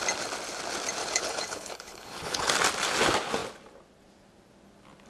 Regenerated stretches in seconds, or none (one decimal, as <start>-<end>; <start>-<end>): 1.0-2.5